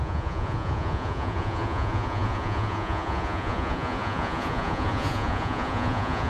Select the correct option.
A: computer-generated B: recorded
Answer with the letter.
A